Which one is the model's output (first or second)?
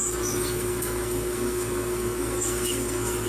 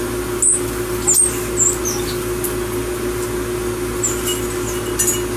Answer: first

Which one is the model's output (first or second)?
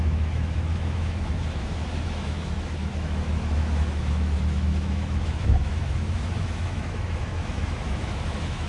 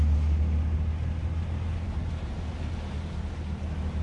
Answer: first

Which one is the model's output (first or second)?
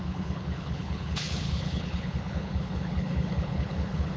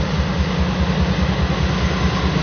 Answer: first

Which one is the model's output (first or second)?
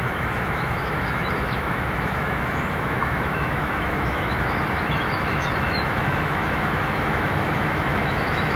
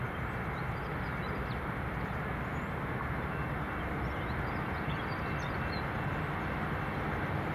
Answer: first